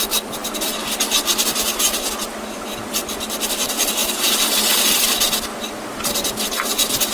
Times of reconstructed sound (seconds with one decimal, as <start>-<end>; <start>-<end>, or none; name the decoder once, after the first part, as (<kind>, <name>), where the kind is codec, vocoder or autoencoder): none